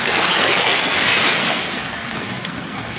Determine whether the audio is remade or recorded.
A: remade